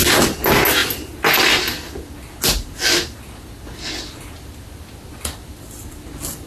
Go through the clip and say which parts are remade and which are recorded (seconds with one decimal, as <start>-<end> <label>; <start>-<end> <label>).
0.0-6.5 recorded